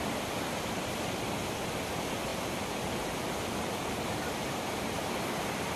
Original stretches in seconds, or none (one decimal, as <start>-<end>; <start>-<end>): 0.0-2.3